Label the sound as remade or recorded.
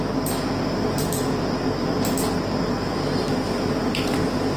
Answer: recorded